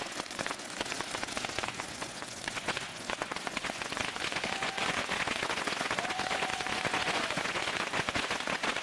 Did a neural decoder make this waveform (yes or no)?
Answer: yes